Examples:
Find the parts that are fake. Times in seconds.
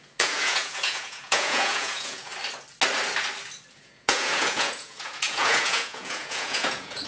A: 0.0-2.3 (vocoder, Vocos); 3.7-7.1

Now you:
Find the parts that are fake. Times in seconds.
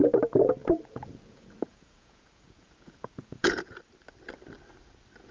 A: 0.6-3.8 (vocoder, Vocos)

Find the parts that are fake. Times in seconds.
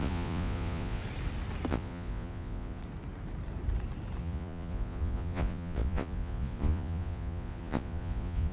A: 0.0-1.0 (vocoder, Vocos); 1.7-2.8; 4.2-8.5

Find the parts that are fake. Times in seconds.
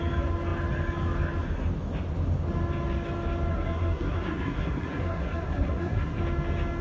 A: 3.5-6.2 (codec, SNAC)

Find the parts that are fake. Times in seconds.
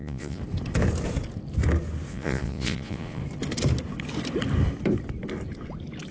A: 0.0-0.4 (vocoder, Vocos); 2.1-3.2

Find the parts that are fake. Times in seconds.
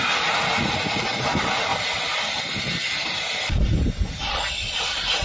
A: 1.7-4.8 (vocoder, BigVGAN v2)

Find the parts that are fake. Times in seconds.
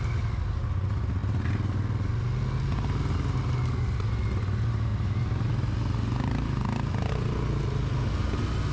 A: none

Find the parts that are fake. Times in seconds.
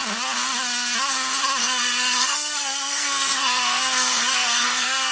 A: 1.6-5.1 (codec, SNAC)